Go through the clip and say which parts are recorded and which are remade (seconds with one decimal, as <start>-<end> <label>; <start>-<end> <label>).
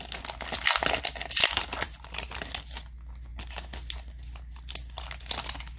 0.0-5.8 recorded